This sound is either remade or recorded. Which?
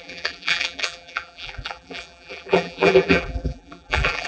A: remade